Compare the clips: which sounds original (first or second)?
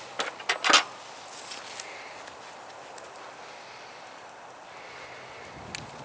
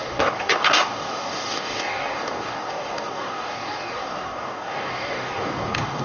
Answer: first